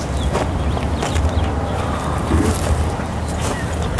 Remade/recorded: recorded